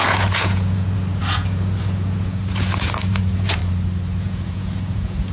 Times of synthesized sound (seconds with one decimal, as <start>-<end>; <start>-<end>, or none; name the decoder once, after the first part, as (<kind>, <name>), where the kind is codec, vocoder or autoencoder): 0.0-3.6 (vocoder, Vocos); 4.2-5.3